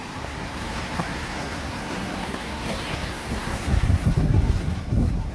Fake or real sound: fake